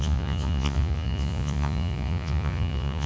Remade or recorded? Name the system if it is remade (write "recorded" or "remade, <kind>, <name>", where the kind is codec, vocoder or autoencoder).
remade, vocoder, Vocos